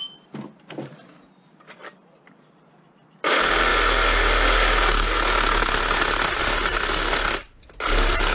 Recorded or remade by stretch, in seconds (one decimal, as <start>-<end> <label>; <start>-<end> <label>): 0.0-3.7 remade; 3.7-7.3 recorded; 7.3-8.3 remade